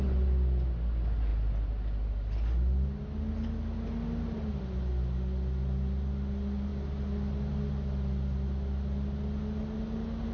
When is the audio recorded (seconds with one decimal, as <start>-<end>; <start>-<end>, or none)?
0.0-10.3